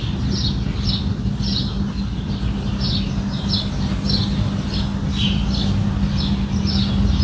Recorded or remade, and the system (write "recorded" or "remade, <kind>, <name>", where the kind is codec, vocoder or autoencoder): recorded